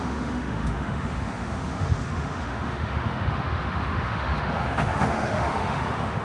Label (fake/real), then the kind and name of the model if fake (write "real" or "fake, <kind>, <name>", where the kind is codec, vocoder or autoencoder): fake, autoencoder, DAC-VAE